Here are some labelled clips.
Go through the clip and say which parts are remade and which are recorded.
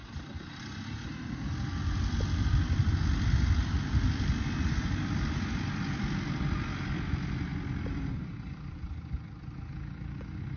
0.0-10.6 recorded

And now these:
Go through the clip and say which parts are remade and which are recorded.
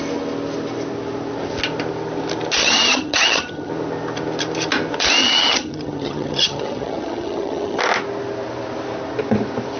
0.0-2.6 recorded; 2.6-3.7 remade; 3.7-5.2 recorded; 5.2-7.8 remade; 7.8-9.8 recorded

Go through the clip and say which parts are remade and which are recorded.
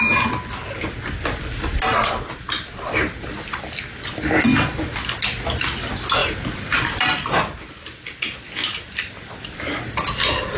0.0-6.2 recorded; 6.2-7.7 remade; 7.7-10.6 recorded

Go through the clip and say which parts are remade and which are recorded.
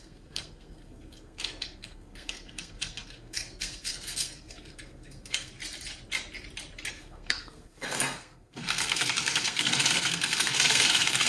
0.0-5.5 remade; 5.5-6.9 recorded; 6.9-11.3 remade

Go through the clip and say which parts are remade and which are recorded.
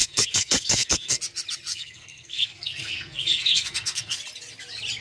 0.0-1.2 remade; 1.2-1.7 recorded; 1.7-4.2 remade; 4.2-5.0 recorded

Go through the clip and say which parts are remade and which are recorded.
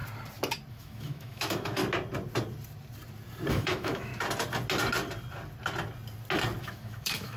0.0-0.7 recorded; 0.7-1.8 remade; 1.8-3.5 recorded; 3.5-4.1 remade; 4.1-6.6 recorded; 6.6-7.4 remade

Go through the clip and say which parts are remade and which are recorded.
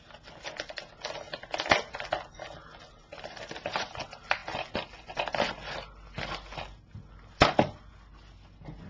0.0-8.9 recorded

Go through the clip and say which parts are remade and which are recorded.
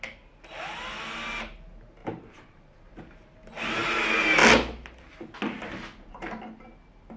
0.0-2.0 recorded; 2.0-3.0 remade; 3.0-7.2 recorded